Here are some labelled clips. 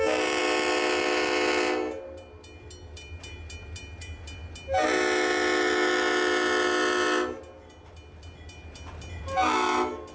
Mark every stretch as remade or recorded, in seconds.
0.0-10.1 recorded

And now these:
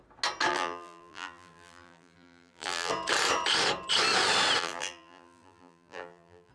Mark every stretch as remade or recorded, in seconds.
0.0-0.5 recorded; 0.5-2.9 remade; 2.9-4.6 recorded; 4.6-6.5 remade

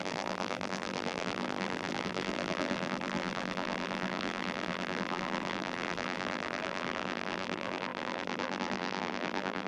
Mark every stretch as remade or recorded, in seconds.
0.0-9.7 remade

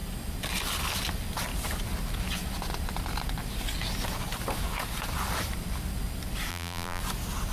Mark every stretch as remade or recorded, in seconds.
0.0-6.5 recorded; 6.5-7.0 remade; 7.0-7.5 recorded

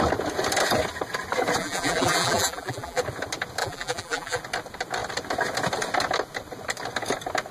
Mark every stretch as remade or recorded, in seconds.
0.0-1.6 recorded; 1.6-3.0 remade; 3.0-3.6 recorded; 3.6-4.4 remade; 4.4-7.5 recorded

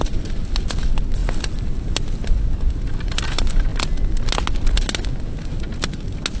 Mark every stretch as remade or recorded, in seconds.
0.0-6.4 recorded